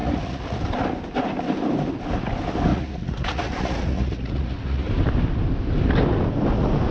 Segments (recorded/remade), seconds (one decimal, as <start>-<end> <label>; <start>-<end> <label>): 0.0-0.6 remade; 0.6-2.7 recorded; 2.7-4.9 remade; 4.9-6.9 recorded